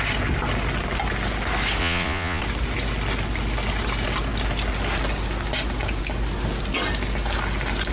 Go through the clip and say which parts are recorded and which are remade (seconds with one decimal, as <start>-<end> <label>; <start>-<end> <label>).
0.0-1.8 recorded; 1.8-2.4 remade; 2.4-7.9 recorded